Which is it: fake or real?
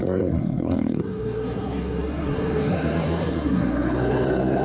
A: fake